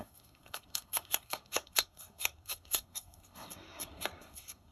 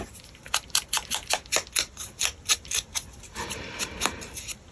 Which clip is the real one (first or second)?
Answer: second